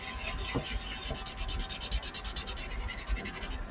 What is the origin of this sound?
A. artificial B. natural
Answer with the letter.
B